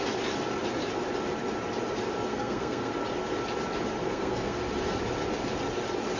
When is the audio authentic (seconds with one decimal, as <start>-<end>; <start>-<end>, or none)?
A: 0.0-2.3; 2.9-4.0; 4.6-6.2